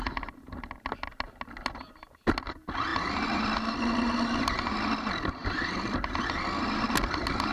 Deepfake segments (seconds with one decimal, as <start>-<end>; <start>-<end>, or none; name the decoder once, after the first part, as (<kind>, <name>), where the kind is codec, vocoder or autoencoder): none